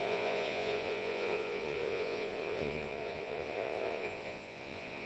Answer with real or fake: fake